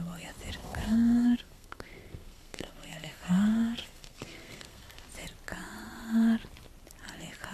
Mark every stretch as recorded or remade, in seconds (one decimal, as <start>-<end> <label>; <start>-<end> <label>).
0.0-0.6 recorded; 0.6-5.1 remade; 5.1-7.5 recorded